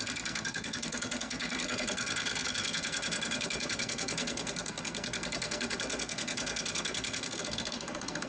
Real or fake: fake